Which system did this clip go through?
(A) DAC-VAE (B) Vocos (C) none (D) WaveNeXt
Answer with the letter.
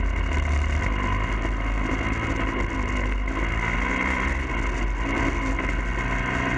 C